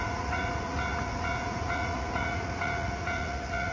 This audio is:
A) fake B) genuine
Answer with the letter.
A